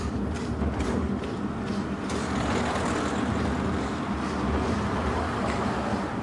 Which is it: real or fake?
real